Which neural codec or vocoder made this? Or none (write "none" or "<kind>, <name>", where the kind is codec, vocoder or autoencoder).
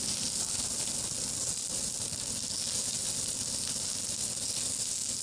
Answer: none